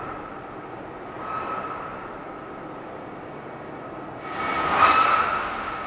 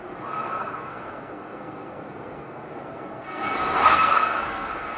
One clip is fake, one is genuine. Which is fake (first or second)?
second